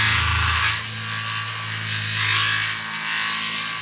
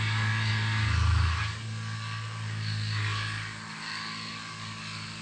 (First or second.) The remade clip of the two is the second